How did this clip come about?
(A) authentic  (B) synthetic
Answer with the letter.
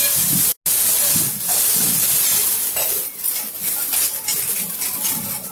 A